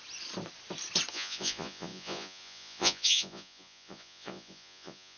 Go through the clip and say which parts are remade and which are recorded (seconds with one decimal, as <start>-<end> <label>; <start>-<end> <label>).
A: 0.0-1.1 recorded; 1.1-5.2 remade

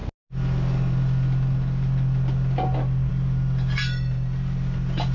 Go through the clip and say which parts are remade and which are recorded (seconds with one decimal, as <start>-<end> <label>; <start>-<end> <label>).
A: 0.0-5.1 recorded